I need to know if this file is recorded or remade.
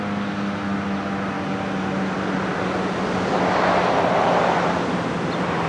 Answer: recorded